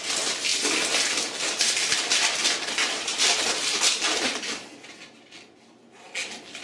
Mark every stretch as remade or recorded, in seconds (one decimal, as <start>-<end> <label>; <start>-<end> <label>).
0.0-0.5 recorded; 0.5-2.7 remade; 2.7-3.1 recorded; 3.1-4.8 remade; 4.8-6.6 recorded